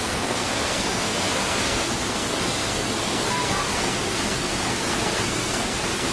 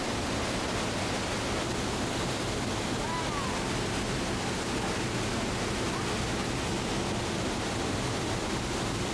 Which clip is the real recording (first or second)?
second